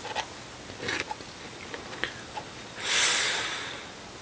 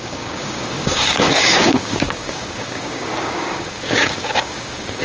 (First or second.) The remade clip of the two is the second